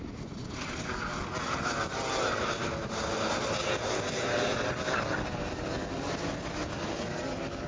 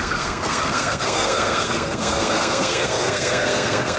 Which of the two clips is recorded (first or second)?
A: first